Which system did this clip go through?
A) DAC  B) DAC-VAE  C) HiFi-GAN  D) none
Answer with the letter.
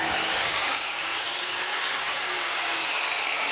A